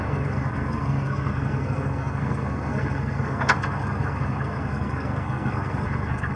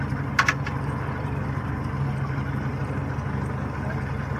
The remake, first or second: first